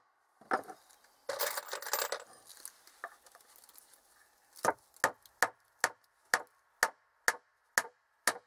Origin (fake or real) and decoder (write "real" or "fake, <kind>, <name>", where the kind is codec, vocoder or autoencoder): real